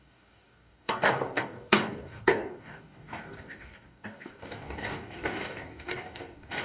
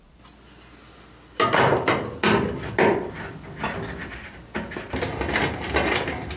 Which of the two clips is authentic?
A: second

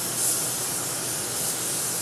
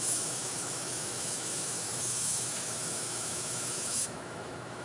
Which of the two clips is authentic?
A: first